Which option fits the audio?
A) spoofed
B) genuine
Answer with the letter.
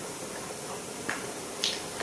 B